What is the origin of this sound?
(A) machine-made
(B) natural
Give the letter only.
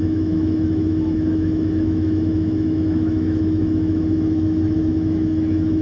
A